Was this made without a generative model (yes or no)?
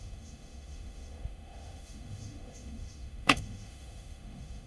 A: no